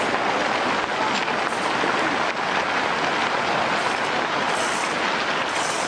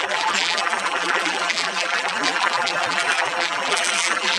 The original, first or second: first